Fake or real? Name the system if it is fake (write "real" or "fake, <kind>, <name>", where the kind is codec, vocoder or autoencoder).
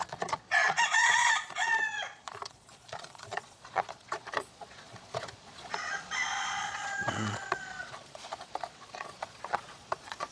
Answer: fake, vocoder, Vocos